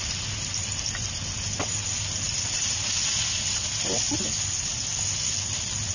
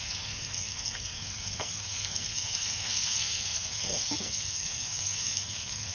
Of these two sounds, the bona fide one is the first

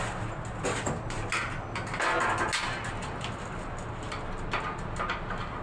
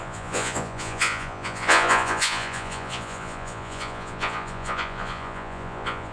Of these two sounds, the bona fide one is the first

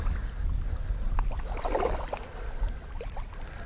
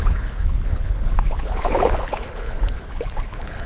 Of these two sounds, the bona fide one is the first